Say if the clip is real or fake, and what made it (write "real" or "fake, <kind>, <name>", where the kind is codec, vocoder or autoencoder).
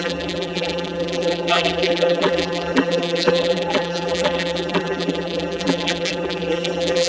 fake, vocoder, BigVGAN v2